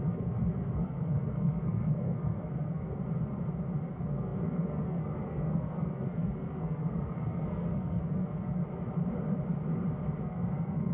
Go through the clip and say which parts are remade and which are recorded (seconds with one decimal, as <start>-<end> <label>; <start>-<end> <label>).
0.0-3.0 remade; 3.0-3.9 recorded; 3.9-8.6 remade; 8.6-10.2 recorded; 10.2-10.9 remade